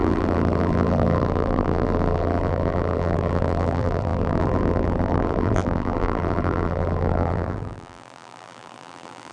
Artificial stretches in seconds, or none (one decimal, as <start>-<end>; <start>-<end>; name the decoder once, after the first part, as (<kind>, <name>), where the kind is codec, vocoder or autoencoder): 0.0-9.3 (vocoder, BigVGAN v2)